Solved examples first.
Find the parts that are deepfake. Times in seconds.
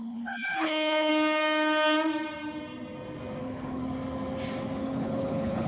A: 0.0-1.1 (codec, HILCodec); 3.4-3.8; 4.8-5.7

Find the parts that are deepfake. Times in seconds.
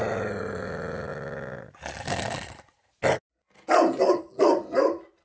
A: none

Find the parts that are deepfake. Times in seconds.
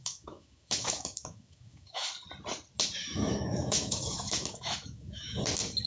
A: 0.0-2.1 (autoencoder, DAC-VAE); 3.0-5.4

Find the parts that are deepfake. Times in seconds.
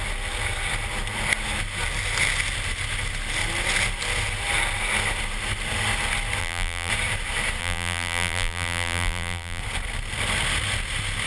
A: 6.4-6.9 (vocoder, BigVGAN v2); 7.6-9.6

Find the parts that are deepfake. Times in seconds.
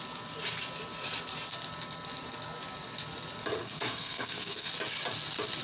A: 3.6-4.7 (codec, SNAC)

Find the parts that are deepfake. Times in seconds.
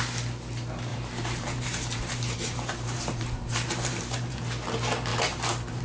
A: 0.9-4.4 (vocoder, BigVGAN v2); 5.1-5.8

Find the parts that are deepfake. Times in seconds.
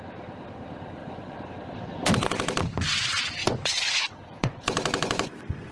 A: 1.0-1.5 (vocoder, Vocos); 3.4-5.3